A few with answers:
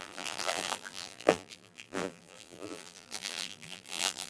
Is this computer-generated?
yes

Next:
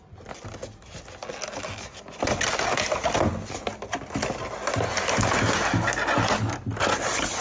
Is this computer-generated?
no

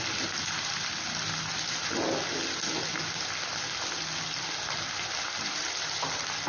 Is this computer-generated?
no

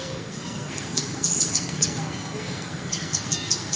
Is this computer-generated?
yes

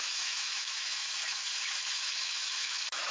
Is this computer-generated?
yes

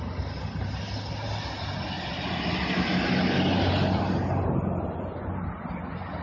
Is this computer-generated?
no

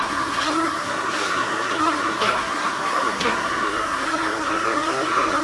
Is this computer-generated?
yes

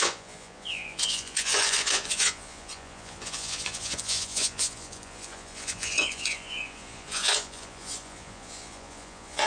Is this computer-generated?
yes